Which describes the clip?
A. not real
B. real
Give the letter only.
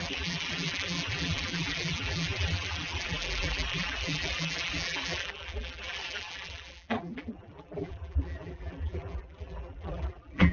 A